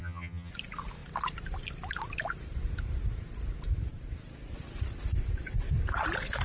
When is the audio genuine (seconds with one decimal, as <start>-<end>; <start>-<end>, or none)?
0.5-6.4